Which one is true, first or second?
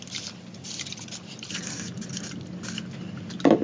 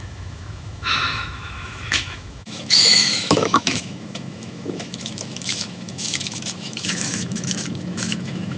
first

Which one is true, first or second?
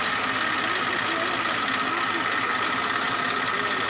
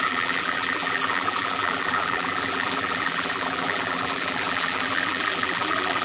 first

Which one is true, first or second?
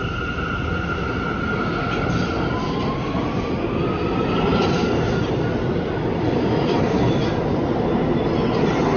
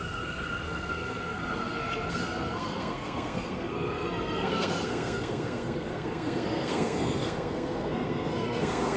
first